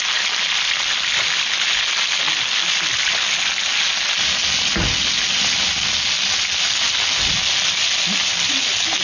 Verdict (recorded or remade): recorded